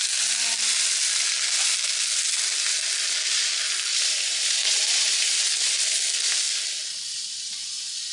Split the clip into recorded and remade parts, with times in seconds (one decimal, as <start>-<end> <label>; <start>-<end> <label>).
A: 0.0-3.9 recorded; 3.9-5.4 remade; 5.4-8.1 recorded

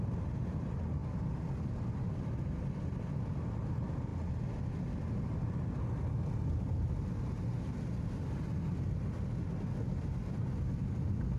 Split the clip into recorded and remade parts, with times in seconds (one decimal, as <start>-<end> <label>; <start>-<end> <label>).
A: 0.0-11.4 recorded

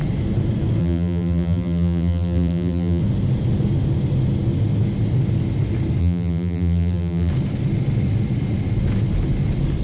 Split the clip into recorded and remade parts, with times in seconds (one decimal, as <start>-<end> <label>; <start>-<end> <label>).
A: 0.0-0.8 recorded; 0.8-3.0 remade; 3.0-6.0 recorded; 6.0-7.3 remade; 7.3-9.8 recorded

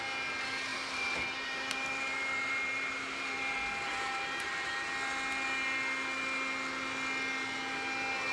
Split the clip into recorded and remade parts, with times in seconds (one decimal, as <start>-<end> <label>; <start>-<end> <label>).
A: 0.0-0.7 recorded; 0.7-4.7 remade; 4.7-8.3 recorded

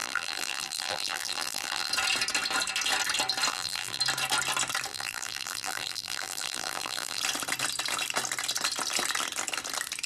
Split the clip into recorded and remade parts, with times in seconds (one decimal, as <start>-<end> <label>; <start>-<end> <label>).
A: 0.0-1.9 remade; 1.9-3.5 recorded; 3.5-4.0 remade; 4.0-4.9 recorded; 4.9-7.2 remade; 7.2-10.1 recorded